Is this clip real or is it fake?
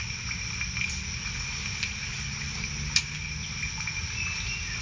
real